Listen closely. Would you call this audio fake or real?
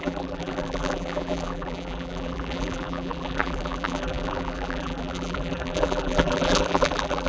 fake